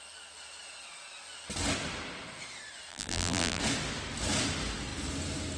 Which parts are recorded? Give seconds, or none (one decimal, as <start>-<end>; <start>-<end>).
0.0-2.9; 3.6-5.6

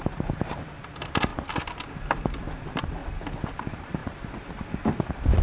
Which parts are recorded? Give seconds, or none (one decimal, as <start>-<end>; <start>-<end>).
1.3-1.9; 3.0-3.6; 4.0-4.7